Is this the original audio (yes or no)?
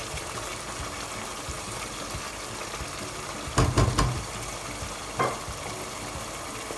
yes